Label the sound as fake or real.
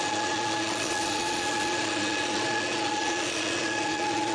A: fake